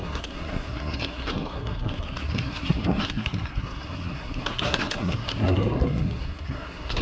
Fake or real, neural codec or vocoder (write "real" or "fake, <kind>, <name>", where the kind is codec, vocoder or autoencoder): fake, codec, SNAC